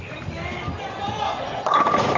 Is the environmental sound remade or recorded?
recorded